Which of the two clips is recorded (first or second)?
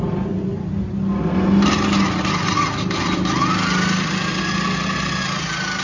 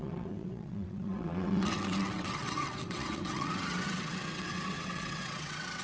first